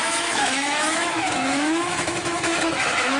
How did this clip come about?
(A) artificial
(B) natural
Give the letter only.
A